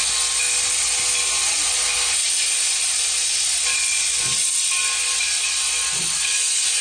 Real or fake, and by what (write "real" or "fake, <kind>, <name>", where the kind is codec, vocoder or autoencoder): real